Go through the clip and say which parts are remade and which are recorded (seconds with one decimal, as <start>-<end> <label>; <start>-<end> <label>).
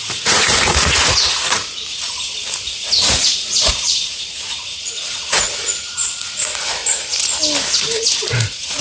0.0-2.3 remade; 2.3-3.0 recorded; 3.0-6.8 remade; 6.8-8.2 recorded; 8.2-8.8 remade